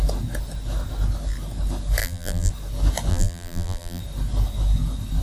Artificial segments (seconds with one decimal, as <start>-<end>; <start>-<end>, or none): 2.0-2.5; 3.1-4.0